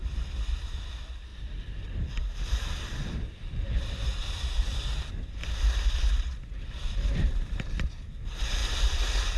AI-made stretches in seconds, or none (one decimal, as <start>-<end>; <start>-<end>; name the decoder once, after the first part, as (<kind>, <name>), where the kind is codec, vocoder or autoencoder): 1.3-5.1 (vocoder, BigVGAN v2); 8.6-9.4